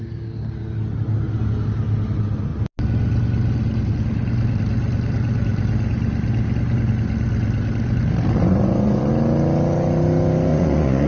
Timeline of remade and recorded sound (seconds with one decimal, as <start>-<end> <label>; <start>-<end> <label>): 0.0-8.4 recorded; 8.4-9.1 remade; 9.1-10.5 recorded; 10.5-11.1 remade